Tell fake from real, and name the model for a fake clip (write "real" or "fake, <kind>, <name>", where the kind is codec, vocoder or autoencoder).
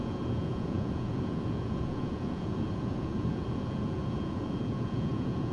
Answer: fake, vocoder, Vocos